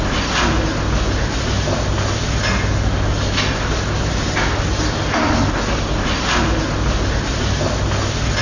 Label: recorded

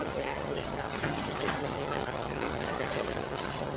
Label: remade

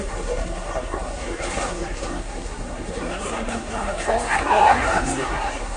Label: remade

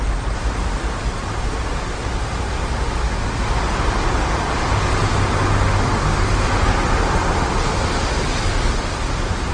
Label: recorded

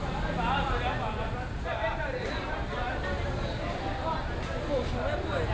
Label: recorded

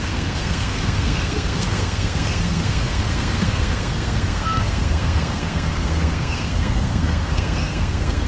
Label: remade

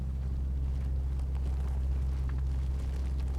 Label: recorded